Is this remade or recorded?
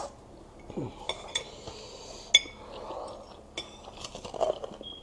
recorded